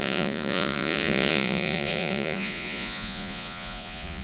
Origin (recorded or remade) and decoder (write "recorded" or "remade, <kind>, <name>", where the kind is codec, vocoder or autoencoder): remade, vocoder, Vocos